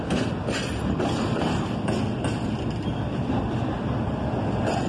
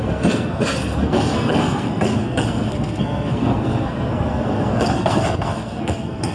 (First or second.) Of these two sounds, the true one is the first